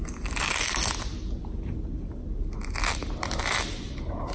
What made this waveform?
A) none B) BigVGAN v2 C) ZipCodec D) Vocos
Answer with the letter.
A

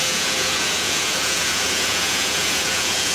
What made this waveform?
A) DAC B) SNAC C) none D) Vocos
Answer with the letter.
D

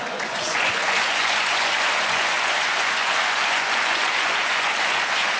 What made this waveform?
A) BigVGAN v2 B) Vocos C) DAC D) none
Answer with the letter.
B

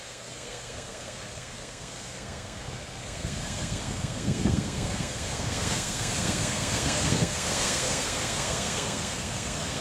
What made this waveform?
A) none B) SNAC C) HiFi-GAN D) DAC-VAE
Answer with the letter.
B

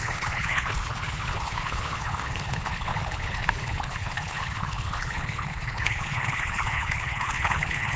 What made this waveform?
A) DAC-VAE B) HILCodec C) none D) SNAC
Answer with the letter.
B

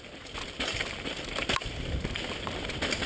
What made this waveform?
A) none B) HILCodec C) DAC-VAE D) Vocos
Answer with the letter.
A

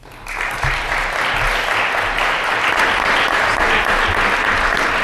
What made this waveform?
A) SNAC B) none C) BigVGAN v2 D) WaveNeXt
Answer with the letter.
B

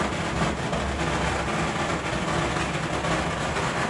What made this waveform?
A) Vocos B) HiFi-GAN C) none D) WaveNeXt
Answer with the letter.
C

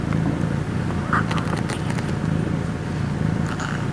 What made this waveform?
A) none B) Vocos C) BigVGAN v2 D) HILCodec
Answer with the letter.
A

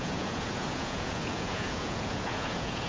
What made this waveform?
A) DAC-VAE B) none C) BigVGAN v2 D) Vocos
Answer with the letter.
D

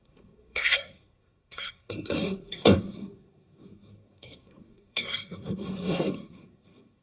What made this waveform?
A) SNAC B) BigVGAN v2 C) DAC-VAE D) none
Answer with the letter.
A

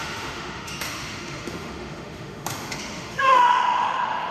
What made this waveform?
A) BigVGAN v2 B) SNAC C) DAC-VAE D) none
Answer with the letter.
C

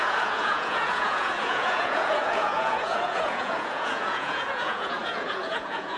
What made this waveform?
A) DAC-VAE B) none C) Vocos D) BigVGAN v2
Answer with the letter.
C